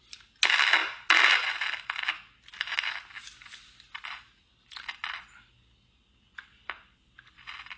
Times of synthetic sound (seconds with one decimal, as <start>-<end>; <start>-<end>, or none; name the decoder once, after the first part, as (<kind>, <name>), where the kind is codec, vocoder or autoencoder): none